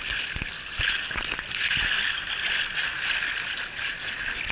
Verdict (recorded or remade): recorded